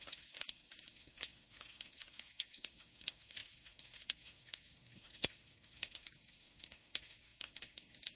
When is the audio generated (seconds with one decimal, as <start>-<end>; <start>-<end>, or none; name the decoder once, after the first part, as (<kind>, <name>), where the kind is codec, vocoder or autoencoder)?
0.0-8.2 (codec, SNAC)